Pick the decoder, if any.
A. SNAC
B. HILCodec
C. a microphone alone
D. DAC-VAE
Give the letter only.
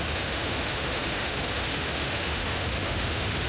D